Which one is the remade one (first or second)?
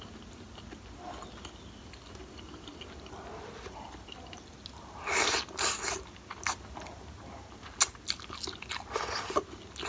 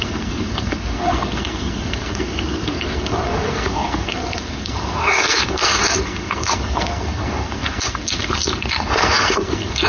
second